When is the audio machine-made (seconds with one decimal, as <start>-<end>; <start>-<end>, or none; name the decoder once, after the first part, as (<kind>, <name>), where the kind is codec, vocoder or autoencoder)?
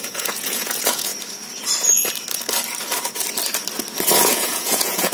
0.0-1.1 (vocoder, Vocos); 4.2-5.1